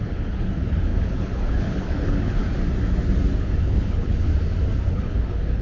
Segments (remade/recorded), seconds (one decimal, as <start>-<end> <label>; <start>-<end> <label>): 0.0-2.4 remade; 2.4-3.4 recorded; 3.4-4.3 remade; 4.3-4.9 recorded; 4.9-5.6 remade

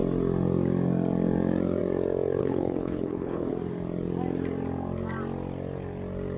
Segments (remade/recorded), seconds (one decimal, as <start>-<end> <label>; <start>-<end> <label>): 0.0-2.4 recorded; 2.4-3.5 remade; 3.5-6.4 recorded